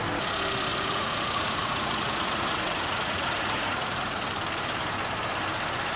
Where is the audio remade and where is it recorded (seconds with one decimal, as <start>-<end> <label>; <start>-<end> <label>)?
0.0-0.7 recorded; 0.7-4.3 remade; 4.3-6.0 recorded